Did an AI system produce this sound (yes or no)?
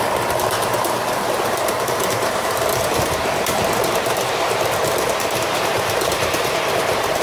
yes